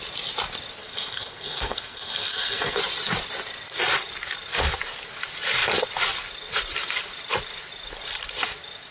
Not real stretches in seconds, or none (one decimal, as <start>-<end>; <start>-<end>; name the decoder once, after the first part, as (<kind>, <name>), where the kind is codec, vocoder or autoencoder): 0.8-2.8 (codec, SNAC)